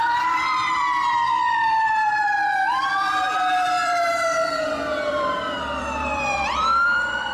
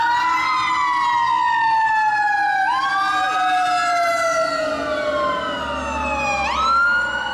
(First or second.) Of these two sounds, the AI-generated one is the first